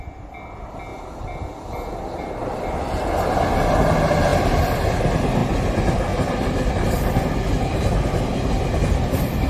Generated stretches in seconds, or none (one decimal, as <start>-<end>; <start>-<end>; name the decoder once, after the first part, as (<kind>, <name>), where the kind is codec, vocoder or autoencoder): none